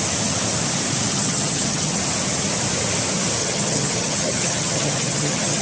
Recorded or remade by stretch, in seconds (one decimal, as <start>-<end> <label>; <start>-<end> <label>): 0.0-1.1 recorded; 1.1-2.0 remade; 2.0-3.4 recorded; 3.4-5.6 remade